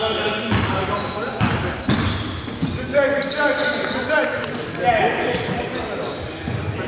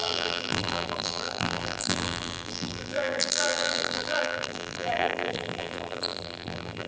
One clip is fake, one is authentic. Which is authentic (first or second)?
first